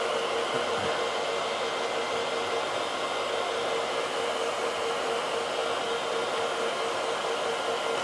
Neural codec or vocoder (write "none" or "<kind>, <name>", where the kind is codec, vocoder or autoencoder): none